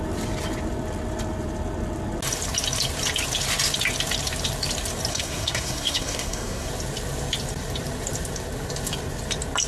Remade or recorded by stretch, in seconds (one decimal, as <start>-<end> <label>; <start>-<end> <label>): 0.0-5.1 recorded; 5.1-6.7 remade; 6.7-9.7 recorded